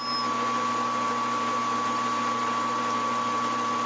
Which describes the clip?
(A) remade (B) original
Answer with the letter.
B